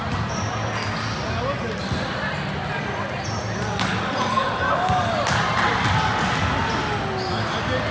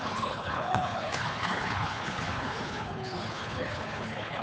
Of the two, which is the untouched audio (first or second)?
first